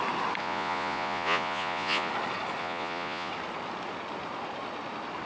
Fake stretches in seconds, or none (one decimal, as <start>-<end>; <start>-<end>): 0.4-2.1; 2.6-3.3